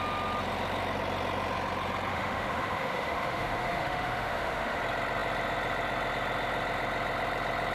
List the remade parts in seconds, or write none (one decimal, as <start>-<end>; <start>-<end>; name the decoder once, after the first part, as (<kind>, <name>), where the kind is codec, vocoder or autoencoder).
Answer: 2.1-4.8 (autoencoder, DAC-VAE)